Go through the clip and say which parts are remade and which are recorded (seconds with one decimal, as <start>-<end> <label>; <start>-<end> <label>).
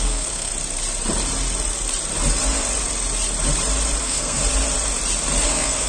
0.0-0.5 remade; 0.5-4.0 recorded; 4.0-4.4 remade; 4.4-5.5 recorded; 5.5-5.9 remade